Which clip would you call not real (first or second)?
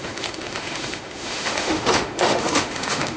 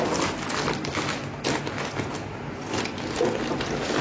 first